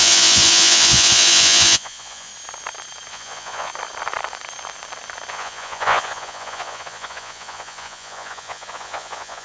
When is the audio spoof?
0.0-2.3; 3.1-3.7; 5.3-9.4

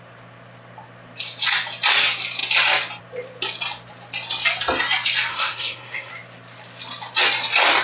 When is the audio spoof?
5.3-6.1

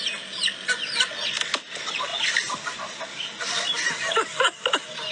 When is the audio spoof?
none

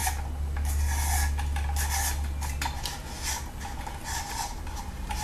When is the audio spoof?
none

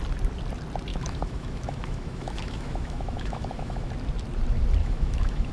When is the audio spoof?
0.9-3.9; 4.8-5.5

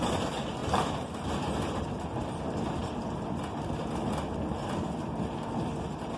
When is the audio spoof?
0.6-1.1

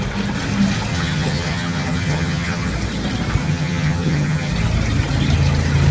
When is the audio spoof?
0.9-2.7; 3.4-4.5